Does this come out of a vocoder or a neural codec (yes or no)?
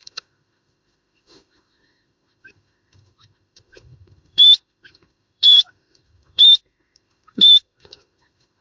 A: yes